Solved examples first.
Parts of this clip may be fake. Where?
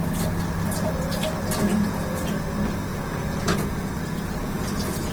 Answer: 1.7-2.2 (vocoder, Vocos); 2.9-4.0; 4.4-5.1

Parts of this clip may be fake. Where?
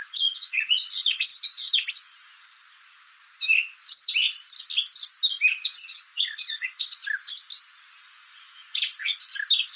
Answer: 0.0-1.3 (vocoder, Vocos); 1.9-2.6; 5.8-7.0; 8.0-9.3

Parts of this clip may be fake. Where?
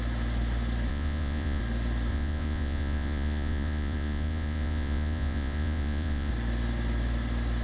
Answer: 0.9-1.6 (vocoder, Vocos); 2.1-6.3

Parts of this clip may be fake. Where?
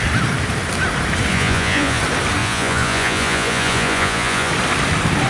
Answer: 1.3-2.0 (vocoder, Vocos); 2.4-4.5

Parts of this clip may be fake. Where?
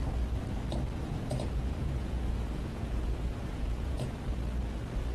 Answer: 1.0-4.1 (vocoder, Vocos)